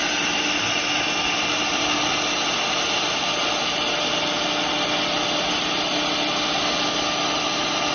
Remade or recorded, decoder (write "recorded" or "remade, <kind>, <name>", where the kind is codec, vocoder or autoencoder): recorded